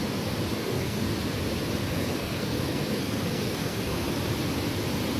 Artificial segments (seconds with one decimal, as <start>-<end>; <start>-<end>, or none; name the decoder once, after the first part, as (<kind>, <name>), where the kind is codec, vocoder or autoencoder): 0.5-1.1 (codec, SNAC); 1.8-4.2